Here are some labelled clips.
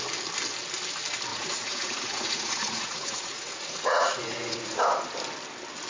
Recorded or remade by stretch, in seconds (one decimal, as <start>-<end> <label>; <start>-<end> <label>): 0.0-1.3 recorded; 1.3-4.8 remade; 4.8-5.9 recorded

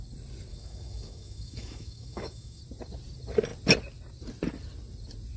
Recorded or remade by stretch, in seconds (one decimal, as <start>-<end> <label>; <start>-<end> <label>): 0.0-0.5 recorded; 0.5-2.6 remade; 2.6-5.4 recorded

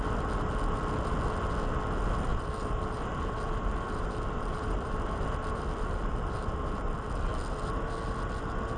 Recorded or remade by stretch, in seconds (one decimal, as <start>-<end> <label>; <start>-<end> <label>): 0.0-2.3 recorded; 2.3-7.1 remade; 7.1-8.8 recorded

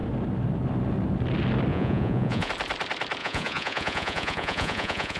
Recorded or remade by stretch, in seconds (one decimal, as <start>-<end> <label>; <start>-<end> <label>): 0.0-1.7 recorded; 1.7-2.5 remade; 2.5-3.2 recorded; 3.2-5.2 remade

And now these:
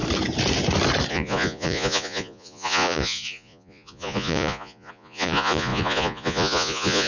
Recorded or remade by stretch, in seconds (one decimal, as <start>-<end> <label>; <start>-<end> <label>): 0.0-1.1 recorded; 1.1-7.1 remade